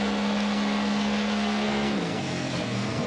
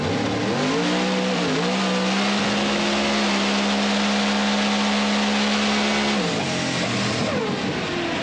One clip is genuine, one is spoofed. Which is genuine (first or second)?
second